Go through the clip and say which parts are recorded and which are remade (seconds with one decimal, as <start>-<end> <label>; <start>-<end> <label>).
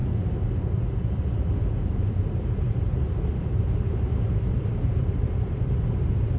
0.0-1.0 recorded; 1.0-6.4 remade